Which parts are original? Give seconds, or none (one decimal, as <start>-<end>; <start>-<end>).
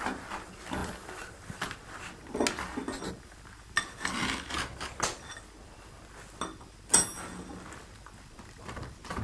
0.0-9.2